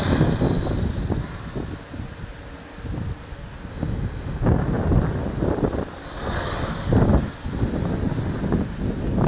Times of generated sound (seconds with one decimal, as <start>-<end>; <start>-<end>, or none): 3.7-4.4

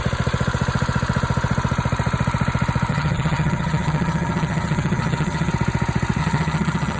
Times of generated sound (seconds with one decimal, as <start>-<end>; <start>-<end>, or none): 2.9-5.5; 6.2-7.0

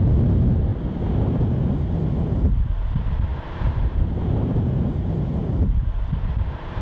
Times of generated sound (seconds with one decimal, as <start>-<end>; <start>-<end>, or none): 3.3-6.8

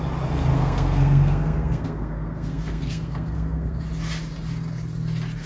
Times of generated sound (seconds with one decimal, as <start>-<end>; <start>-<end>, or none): 0.5-3.8

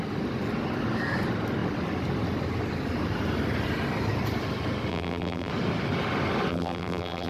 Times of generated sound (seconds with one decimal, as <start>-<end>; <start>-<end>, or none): 4.9-5.5; 6.5-7.3

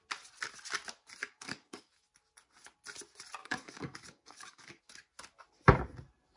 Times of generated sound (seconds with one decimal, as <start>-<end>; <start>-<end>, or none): 1.2-1.9; 3.4-4.8

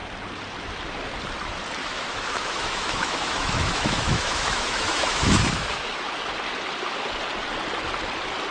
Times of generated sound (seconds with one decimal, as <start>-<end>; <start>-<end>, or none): 1.8-6.1

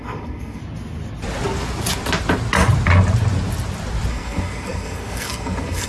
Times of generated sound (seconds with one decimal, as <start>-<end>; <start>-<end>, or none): 0.0-0.6; 4.1-5.9